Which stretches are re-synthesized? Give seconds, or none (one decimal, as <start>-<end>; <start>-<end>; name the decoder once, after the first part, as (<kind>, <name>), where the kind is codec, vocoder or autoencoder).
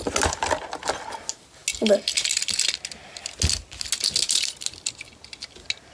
none